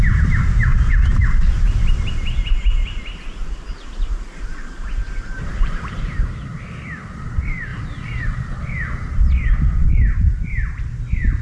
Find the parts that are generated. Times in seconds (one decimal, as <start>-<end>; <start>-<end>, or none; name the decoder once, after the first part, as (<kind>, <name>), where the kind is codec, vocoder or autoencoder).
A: 0.7-1.5 (vocoder, BigVGAN v2); 2.8-6.4